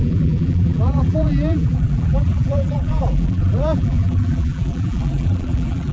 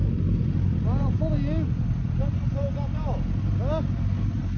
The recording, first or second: second